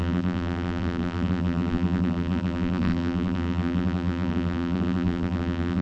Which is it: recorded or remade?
remade